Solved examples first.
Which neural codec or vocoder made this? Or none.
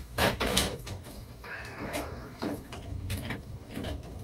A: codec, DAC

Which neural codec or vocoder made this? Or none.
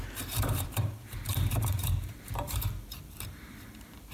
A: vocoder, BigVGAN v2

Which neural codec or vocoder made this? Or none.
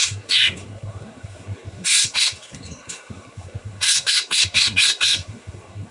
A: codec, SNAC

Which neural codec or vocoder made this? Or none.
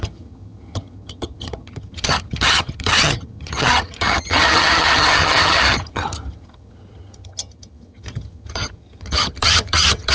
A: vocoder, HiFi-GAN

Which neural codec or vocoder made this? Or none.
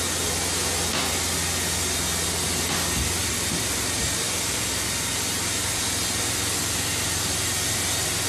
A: none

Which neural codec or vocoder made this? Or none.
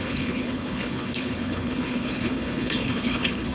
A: codec, HILCodec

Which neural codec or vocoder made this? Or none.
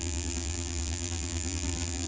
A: vocoder, BigVGAN v2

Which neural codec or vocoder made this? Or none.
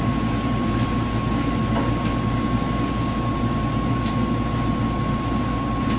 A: none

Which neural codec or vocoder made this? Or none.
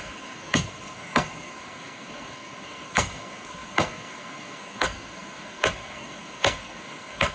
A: codec, SNAC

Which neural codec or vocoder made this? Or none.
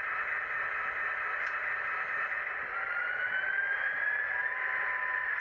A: none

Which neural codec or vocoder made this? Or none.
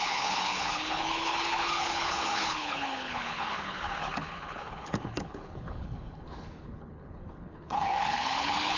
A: codec, HILCodec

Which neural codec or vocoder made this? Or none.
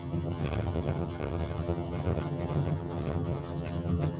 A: vocoder, HiFi-GAN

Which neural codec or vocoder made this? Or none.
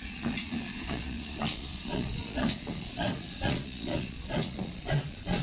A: vocoder, Vocos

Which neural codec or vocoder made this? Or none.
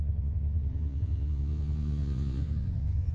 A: vocoder, Vocos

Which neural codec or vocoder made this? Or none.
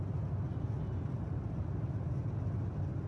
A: none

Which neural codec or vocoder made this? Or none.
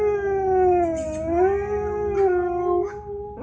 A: none